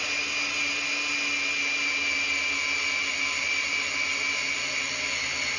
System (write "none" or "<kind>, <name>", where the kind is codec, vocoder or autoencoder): none